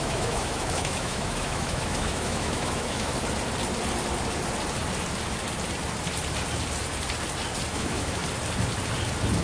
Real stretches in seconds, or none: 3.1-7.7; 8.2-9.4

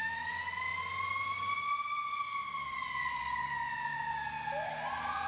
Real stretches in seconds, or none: 0.0-5.3

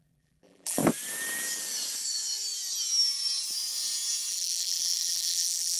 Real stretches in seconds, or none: 0.8-4.3

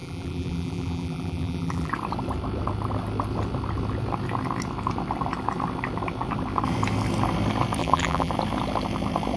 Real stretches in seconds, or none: 1.9-7.8; 8.3-9.4